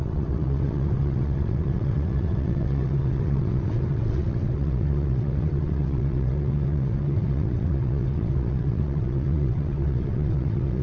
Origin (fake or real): fake